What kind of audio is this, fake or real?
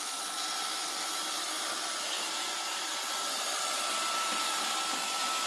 real